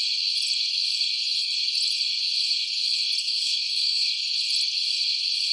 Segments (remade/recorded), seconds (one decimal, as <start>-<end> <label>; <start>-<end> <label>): 0.0-3.2 recorded; 3.2-4.1 remade; 4.1-5.5 recorded